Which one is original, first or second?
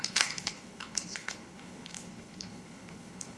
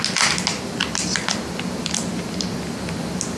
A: second